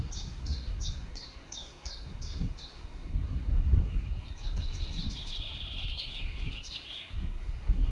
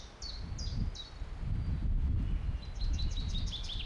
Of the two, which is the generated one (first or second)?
first